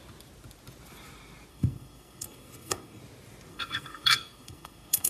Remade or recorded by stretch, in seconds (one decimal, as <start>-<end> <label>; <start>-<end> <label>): 0.0-1.5 recorded; 1.5-3.0 remade; 3.0-3.5 recorded; 3.5-5.1 remade